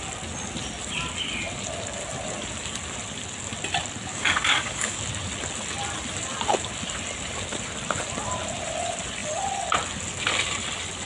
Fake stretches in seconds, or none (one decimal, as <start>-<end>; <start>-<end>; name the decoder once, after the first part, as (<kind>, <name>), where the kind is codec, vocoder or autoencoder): 4.1-5.0 (codec, DAC)